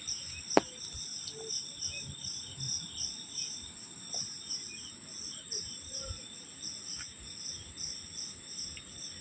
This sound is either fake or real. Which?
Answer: real